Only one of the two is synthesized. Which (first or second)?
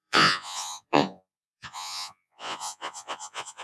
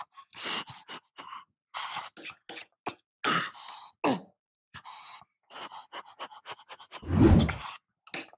first